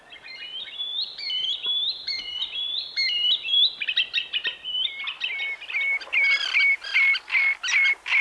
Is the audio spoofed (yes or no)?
no